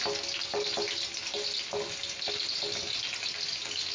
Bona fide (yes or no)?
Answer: yes